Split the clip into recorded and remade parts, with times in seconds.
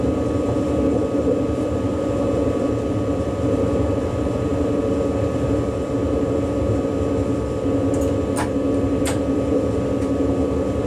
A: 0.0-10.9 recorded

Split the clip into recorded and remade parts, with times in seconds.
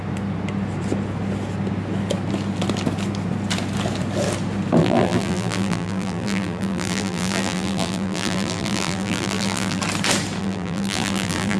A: 0.0-4.8 recorded; 4.8-9.8 remade; 9.8-10.4 recorded; 10.4-11.6 remade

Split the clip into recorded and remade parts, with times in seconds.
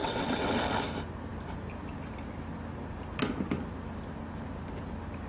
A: 0.0-0.6 remade; 0.6-5.3 recorded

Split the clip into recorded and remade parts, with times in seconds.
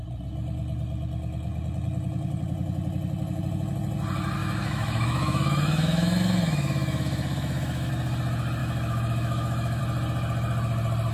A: 0.0-4.4 recorded; 4.4-7.9 remade; 7.9-8.6 recorded; 8.6-9.8 remade; 9.8-11.1 recorded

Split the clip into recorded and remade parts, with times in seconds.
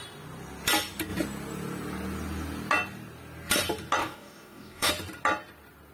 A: 0.0-4.0 recorded; 4.0-4.9 remade; 4.9-5.9 recorded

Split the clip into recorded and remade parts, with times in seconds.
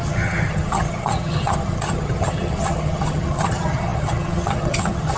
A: 0.0-5.2 remade